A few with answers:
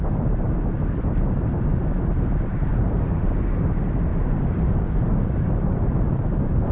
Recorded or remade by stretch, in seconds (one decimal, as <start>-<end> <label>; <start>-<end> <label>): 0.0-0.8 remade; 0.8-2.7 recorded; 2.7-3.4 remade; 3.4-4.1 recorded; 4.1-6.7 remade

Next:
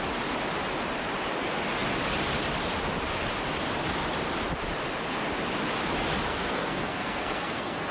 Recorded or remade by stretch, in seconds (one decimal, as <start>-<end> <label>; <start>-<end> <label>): 0.0-6.3 recorded; 6.3-7.9 remade

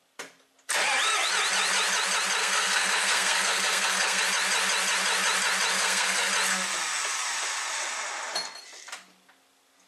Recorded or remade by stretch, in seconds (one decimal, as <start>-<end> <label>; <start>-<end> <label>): 0.0-2.4 recorded; 2.4-4.2 remade; 4.2-5.7 recorded; 5.7-6.3 remade; 6.3-9.9 recorded